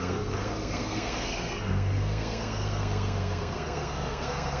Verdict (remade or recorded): remade